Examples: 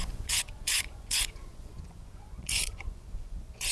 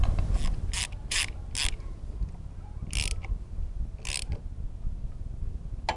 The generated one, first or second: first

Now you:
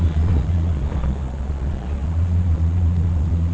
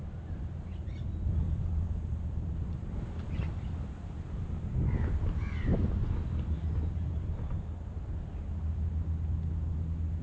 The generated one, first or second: first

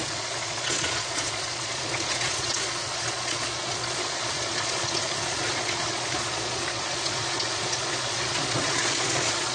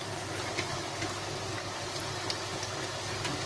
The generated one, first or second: first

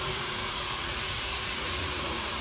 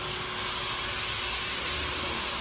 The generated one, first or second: first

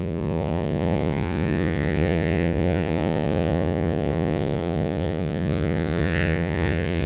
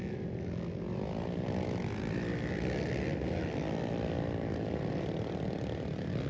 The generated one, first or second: first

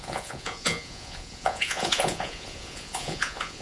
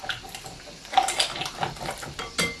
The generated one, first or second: first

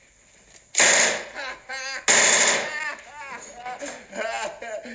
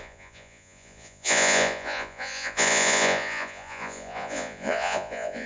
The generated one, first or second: second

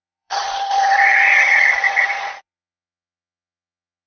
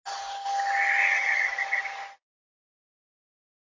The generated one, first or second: first